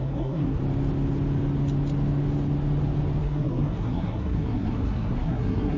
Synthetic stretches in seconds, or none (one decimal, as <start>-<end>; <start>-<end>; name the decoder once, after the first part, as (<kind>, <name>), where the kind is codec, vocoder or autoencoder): 0.0-0.6 (codec, SNAC); 3.2-5.8